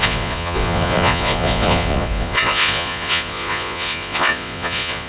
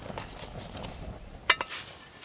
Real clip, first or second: second